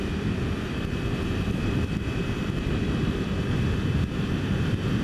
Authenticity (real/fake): fake